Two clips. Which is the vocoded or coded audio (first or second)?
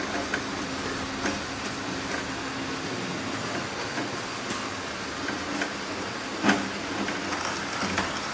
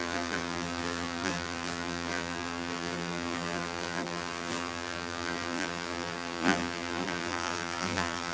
second